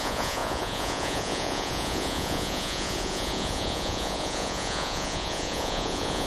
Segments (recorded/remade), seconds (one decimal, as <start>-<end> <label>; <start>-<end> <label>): 0.0-6.3 remade

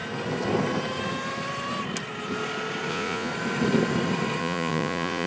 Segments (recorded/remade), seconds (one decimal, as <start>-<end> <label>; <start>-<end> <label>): 0.0-2.9 recorded; 2.9-3.3 remade; 3.3-4.4 recorded; 4.4-5.3 remade

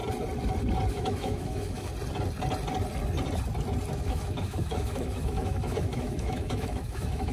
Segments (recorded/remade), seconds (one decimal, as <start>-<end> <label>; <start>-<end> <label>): 0.0-0.9 recorded; 0.9-1.9 remade; 1.9-3.9 recorded; 3.9-7.3 remade

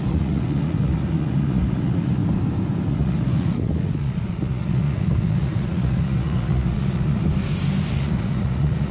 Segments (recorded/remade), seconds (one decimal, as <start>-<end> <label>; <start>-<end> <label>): 0.0-2.2 remade; 2.2-2.9 recorded; 2.9-7.2 remade; 7.2-7.9 recorded; 7.9-8.9 remade

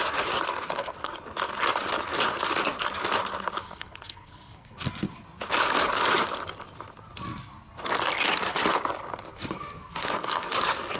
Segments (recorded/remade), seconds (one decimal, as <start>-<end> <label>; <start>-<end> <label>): 0.0-0.5 recorded; 0.5-1.1 remade; 1.1-3.6 recorded; 3.6-4.8 remade; 4.8-9.3 recorded; 9.3-10.5 remade; 10.5-11.0 recorded